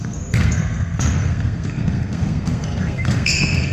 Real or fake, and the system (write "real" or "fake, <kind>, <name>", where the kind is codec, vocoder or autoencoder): fake, codec, SNAC